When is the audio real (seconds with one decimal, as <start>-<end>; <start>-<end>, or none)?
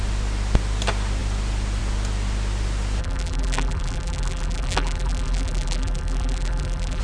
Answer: 0.0-3.0